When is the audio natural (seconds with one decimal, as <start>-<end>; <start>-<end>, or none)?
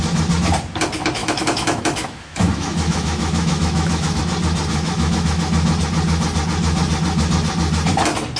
0.0-1.2; 4.2-4.7; 5.4-8.4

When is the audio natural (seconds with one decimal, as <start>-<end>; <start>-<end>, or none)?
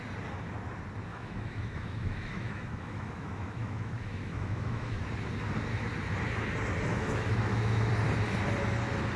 0.0-1.1; 5.0-6.9; 7.9-9.2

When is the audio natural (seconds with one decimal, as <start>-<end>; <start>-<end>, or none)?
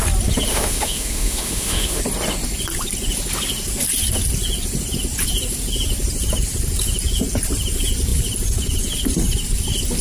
0.0-0.5; 2.0-10.0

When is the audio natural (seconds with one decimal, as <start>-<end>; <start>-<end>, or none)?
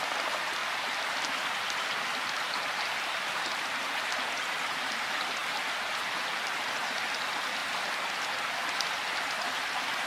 0.0-10.1